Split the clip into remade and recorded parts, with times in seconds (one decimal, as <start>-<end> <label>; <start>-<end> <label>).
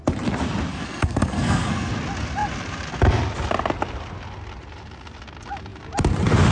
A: 0.0-0.7 recorded; 0.7-1.9 remade; 1.9-6.5 recorded